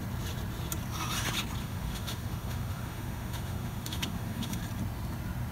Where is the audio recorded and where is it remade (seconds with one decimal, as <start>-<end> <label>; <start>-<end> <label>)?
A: 0.0-1.6 recorded; 1.6-4.6 remade; 4.6-5.5 recorded